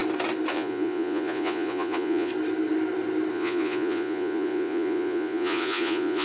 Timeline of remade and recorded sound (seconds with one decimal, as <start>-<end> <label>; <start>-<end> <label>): 0.0-0.5 recorded; 0.5-2.3 remade; 2.3-3.3 recorded; 3.3-6.2 remade